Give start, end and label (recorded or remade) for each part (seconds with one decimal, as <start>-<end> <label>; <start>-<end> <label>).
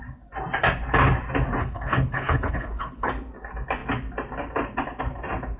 0.0-1.6 recorded; 1.6-3.1 remade; 3.1-5.6 recorded